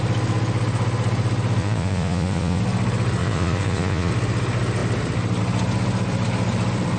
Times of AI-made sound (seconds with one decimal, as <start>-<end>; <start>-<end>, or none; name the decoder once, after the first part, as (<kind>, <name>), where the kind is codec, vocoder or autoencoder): 1.6-2.6 (vocoder, Vocos); 3.2-4.1